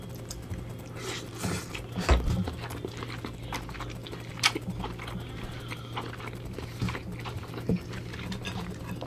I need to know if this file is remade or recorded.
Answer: recorded